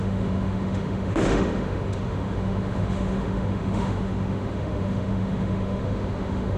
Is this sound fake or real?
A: fake